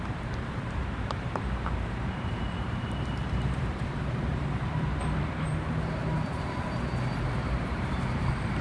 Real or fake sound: fake